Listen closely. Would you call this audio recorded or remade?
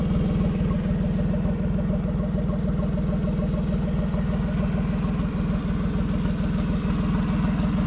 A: recorded